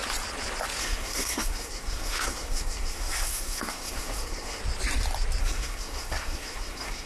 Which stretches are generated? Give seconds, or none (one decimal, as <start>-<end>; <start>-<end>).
0.8-4.6; 5.4-7.1